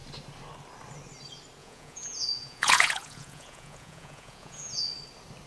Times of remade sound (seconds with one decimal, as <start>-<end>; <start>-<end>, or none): 1.6-4.9